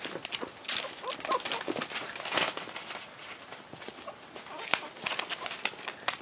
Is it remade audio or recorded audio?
recorded